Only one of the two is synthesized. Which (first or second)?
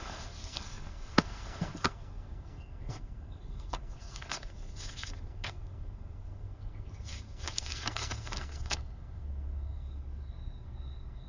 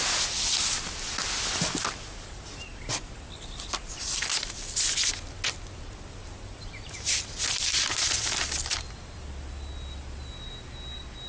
first